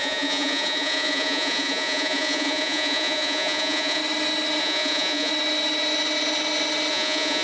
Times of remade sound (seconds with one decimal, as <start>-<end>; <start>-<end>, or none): 0.0-4.0; 4.6-5.3; 6.9-7.4